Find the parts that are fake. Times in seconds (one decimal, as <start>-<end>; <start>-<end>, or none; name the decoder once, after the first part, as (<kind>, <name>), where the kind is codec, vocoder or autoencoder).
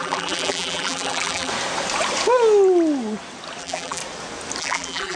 0.0-1.5 (vocoder, BigVGAN v2); 3.6-4.0; 4.6-5.2